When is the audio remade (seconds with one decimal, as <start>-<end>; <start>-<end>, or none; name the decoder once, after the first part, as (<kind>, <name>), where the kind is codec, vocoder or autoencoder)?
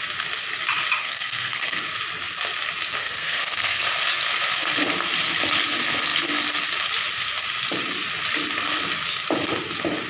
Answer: 1.0-1.8 (codec, SNAC); 3.0-3.8